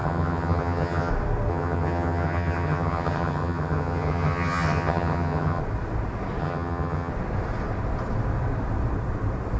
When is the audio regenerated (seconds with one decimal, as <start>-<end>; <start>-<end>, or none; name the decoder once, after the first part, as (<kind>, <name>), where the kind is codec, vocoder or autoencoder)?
0.0-1.1 (vocoder, HiFi-GAN); 1.5-5.6; 6.4-7.1